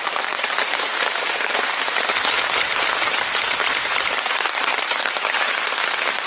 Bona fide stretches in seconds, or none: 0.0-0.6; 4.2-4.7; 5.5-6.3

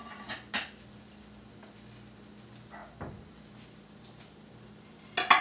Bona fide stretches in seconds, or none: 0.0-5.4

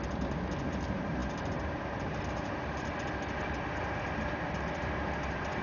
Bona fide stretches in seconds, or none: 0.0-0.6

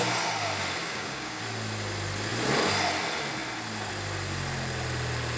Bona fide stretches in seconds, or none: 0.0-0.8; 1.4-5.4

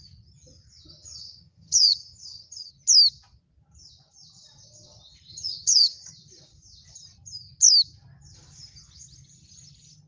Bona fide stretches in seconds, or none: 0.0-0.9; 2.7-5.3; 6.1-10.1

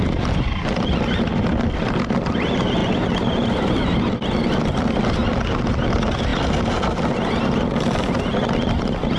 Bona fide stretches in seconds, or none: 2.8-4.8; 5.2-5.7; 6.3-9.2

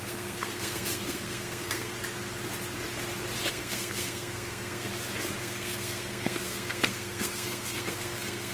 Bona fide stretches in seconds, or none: 1.9-3.5; 4.9-5.4